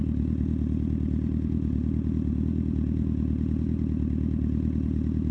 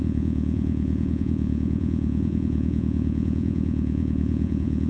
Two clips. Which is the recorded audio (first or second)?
first